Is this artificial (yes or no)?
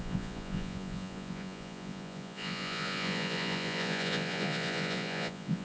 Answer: yes